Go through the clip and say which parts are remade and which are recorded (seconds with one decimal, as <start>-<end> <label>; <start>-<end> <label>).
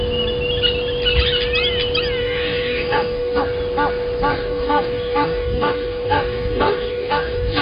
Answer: 0.0-2.2 recorded; 2.2-3.4 remade; 3.4-4.3 recorded; 4.3-7.6 remade